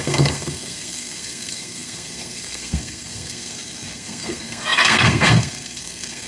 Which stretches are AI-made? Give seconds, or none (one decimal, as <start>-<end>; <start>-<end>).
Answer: 0.0-6.3